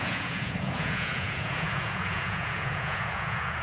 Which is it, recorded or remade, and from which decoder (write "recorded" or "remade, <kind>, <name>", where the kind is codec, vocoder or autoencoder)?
remade, vocoder, Vocos